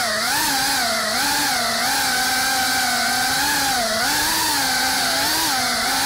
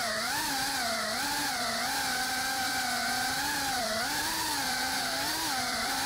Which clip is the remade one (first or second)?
second